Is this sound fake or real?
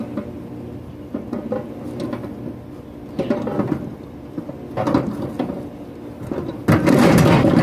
real